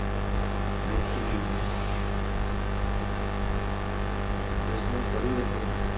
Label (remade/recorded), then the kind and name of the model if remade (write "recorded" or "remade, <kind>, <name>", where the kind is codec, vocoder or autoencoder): recorded